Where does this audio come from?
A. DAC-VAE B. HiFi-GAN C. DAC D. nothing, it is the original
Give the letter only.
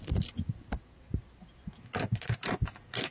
D